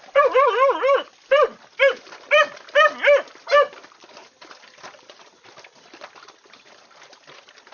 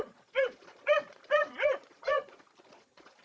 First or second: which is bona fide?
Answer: first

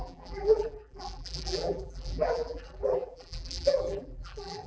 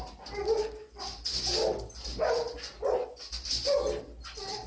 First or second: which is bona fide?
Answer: second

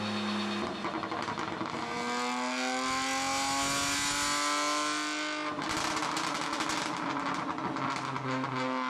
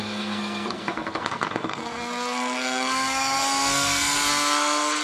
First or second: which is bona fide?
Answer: first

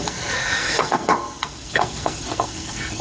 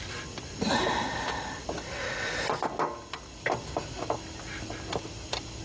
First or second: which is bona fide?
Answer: second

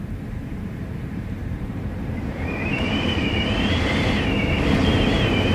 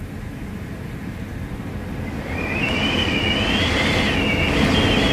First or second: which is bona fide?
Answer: second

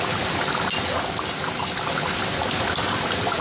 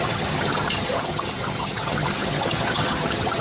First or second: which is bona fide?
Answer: first